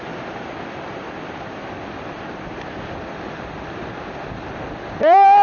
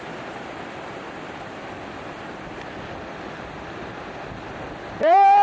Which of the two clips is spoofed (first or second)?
second